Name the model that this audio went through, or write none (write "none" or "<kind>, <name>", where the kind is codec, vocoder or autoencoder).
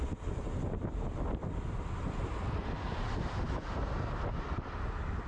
none